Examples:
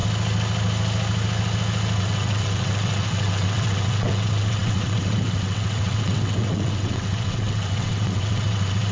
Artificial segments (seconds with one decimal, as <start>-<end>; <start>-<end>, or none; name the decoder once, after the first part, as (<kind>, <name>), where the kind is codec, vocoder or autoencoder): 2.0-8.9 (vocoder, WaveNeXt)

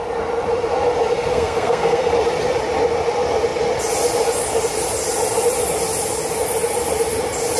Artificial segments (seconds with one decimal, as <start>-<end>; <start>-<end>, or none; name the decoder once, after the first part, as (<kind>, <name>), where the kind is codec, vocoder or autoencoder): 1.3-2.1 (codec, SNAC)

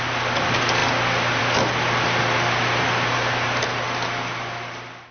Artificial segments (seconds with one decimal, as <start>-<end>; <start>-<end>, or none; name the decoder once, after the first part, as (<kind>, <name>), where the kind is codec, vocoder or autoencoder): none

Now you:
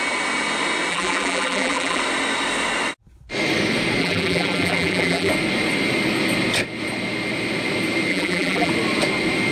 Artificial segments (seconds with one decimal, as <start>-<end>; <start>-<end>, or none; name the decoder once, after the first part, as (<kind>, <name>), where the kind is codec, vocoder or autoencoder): 0.9-2.0 (vocoder, BigVGAN v2); 4.0-5.3; 8.1-8.7